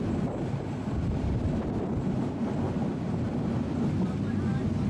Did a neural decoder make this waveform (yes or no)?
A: no